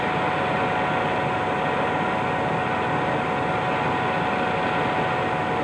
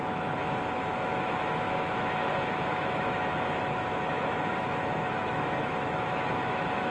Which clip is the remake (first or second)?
second